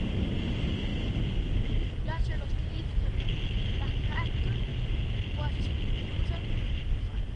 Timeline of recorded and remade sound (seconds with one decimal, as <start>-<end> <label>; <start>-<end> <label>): 0.0-7.4 recorded